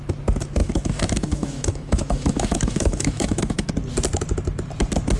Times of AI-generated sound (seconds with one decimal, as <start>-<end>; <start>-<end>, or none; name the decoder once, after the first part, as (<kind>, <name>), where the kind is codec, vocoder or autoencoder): 0.6-3.7 (autoencoder, DAC-VAE)